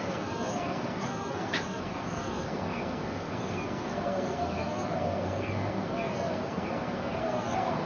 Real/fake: fake